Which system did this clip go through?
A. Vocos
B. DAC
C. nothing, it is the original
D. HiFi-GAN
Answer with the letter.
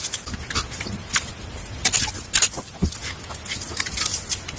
C